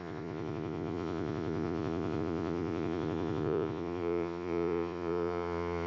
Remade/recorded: remade